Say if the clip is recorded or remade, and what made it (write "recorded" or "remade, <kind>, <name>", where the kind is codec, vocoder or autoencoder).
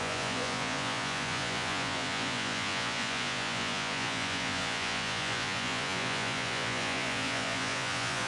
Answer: remade, vocoder, Vocos